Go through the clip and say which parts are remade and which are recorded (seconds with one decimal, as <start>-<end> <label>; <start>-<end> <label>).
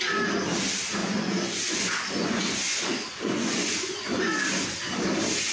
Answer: 0.0-1.0 recorded; 1.0-4.3 remade; 4.3-5.5 recorded